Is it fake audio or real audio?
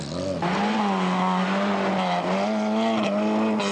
real